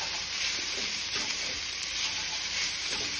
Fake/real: fake